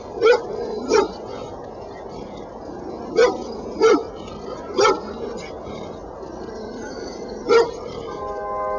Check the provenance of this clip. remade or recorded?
recorded